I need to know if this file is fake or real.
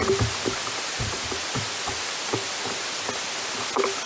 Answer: real